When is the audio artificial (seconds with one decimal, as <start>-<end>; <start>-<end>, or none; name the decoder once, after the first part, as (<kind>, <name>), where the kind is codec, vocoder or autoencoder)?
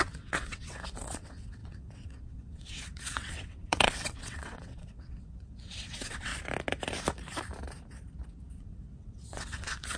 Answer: 0.0-6.3 (vocoder, WaveNeXt); 8.6-10.0